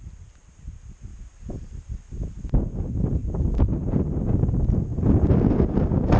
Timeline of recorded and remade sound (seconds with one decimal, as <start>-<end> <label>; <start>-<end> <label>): 0.0-6.2 recorded